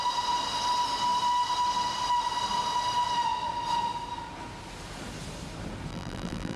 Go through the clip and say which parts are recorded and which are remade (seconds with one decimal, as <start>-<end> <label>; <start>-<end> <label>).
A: 0.0-5.9 recorded; 5.9-6.6 remade